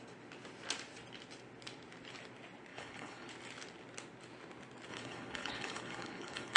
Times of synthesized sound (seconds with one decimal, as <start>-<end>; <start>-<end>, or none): 2.7-3.3; 4.9-6.6